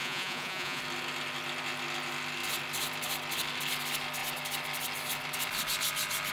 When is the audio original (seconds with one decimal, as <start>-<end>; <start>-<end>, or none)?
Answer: 0.8-6.3